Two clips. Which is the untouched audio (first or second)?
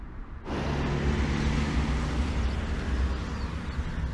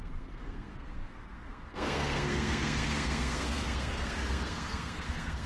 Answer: first